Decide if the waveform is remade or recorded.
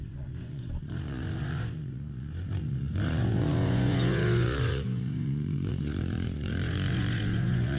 remade